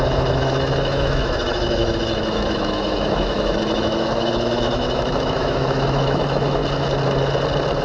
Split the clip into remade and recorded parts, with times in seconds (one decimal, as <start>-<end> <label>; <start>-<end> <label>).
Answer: 0.0-6.6 remade; 6.6-7.8 recorded